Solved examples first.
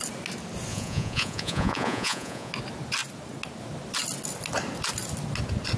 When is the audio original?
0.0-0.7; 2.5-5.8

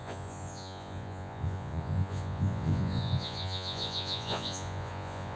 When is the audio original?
none

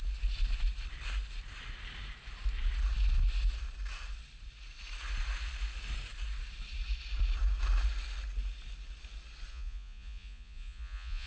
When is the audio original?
0.0-9.5